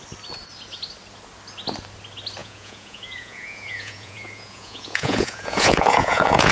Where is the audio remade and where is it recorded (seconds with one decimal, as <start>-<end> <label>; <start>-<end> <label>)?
0.0-2.4 recorded; 2.4-6.5 remade